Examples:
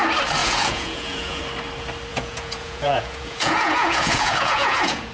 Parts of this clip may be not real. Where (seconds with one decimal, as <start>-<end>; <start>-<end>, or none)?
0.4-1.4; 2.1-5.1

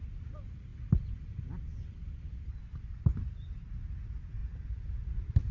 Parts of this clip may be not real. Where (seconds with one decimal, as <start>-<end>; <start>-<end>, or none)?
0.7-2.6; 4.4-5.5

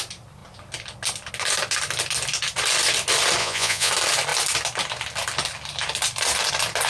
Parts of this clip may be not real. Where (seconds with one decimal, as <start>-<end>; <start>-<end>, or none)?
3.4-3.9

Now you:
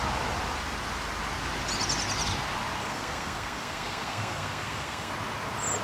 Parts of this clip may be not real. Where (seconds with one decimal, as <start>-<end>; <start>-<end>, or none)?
2.8-5.1